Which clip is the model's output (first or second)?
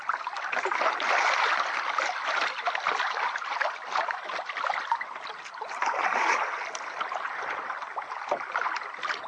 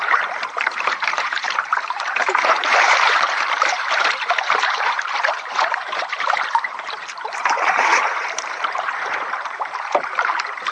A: second